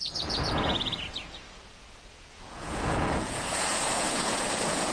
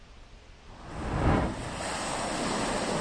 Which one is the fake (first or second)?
first